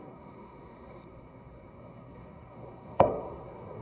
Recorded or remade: remade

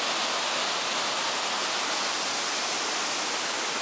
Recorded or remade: recorded